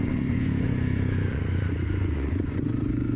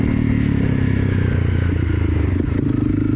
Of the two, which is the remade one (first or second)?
first